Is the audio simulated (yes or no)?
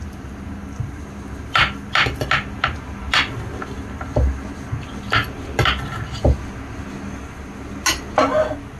no